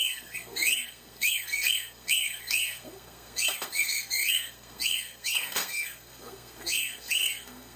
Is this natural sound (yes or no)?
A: no